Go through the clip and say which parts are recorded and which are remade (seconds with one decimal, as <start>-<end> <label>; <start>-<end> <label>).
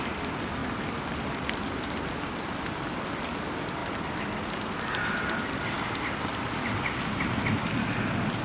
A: 0.0-8.4 recorded